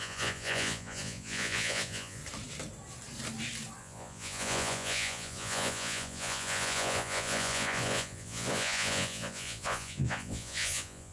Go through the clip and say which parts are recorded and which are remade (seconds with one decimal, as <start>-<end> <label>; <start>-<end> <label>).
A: 0.0-2.2 remade; 2.2-3.8 recorded; 3.8-11.1 remade